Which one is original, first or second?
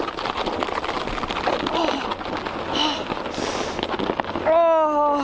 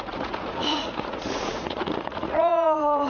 first